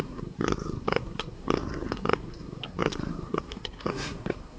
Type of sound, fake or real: fake